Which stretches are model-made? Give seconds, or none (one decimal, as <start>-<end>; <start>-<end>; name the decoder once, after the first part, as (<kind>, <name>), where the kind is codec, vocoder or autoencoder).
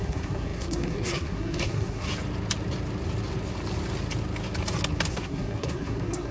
0.0-2.1 (codec, SNAC); 5.1-6.3